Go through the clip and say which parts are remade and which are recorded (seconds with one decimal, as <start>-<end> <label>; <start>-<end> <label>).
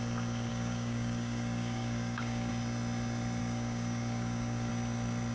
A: 0.0-0.5 recorded; 0.5-2.5 remade; 2.5-3.4 recorded; 3.4-4.7 remade; 4.7-5.3 recorded